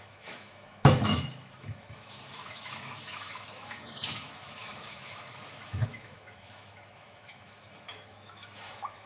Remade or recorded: remade